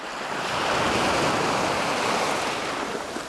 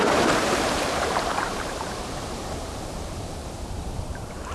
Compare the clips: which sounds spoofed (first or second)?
second